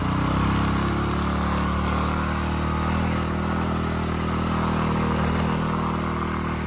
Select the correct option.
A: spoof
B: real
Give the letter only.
B